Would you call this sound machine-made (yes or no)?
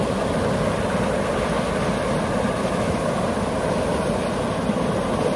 no